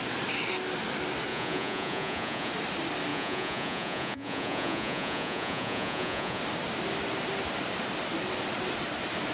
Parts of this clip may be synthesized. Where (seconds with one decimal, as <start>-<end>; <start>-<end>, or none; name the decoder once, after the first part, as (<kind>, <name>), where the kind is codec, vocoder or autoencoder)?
1.3-2.5 (vocoder, Vocos); 3.1-6.4